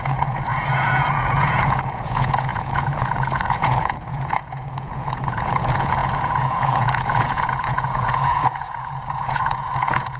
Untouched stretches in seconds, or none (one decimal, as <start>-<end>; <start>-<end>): none